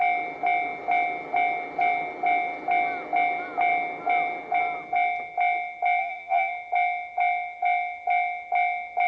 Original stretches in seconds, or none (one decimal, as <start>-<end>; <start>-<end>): 0.0-6.0; 6.5-9.1